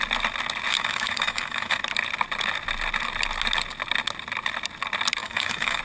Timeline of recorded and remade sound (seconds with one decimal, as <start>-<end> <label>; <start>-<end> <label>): 0.0-0.7 recorded; 0.7-1.8 remade; 1.8-5.2 recorded; 5.2-5.8 remade